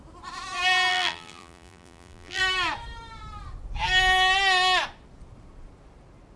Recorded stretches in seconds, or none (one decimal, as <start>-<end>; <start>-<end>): 0.0-0.9; 2.4-6.4